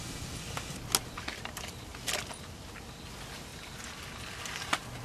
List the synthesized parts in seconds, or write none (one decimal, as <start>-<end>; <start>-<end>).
none